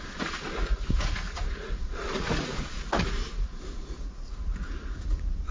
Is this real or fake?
fake